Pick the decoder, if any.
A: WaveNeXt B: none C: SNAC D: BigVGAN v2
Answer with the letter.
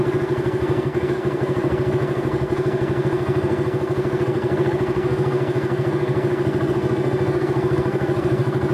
C